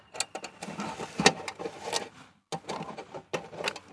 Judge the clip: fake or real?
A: real